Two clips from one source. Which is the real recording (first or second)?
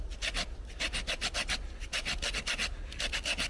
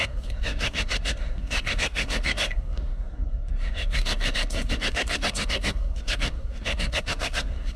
first